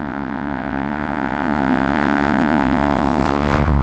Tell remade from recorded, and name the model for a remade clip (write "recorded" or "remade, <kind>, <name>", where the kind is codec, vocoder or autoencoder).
remade, vocoder, WaveNeXt